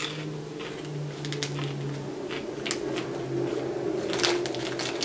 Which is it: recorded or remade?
recorded